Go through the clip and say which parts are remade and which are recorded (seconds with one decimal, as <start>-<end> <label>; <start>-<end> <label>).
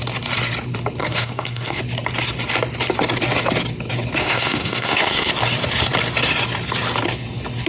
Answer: 0.0-1.0 recorded; 1.0-1.8 remade; 1.8-4.2 recorded; 4.2-5.3 remade; 5.3-7.7 recorded